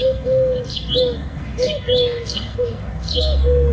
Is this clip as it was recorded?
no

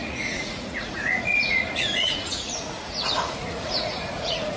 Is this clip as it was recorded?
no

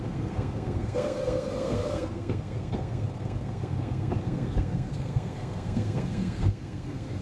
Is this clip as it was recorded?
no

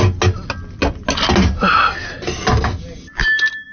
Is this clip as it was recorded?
yes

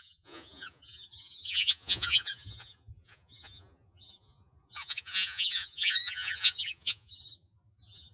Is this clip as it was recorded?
no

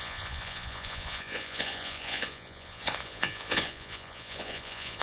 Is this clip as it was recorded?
no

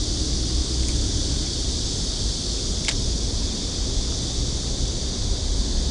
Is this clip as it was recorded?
yes